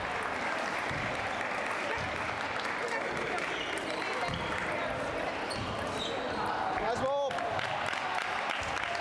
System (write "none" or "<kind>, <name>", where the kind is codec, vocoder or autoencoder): none